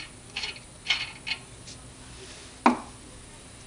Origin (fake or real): real